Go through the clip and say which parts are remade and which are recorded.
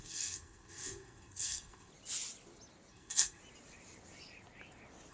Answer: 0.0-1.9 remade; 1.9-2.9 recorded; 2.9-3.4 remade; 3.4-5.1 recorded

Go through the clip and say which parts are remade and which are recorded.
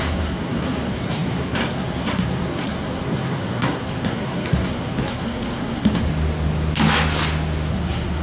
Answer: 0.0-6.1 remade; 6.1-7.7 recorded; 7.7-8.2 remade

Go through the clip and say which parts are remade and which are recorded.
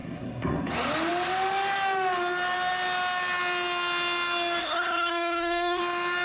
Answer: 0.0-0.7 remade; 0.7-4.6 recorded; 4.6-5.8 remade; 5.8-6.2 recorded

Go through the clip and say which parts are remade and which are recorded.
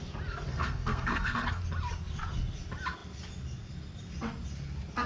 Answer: 0.0-0.5 recorded; 0.5-1.6 remade; 1.6-5.1 recorded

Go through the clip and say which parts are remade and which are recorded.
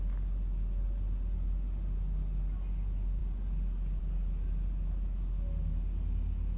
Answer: 0.0-6.6 recorded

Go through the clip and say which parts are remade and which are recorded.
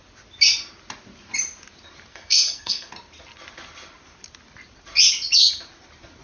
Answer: 0.0-2.1 recorded; 2.1-2.9 remade; 2.9-6.2 recorded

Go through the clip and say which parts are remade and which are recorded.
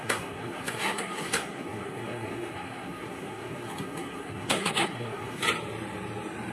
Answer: 0.0-5.4 remade; 5.4-6.5 recorded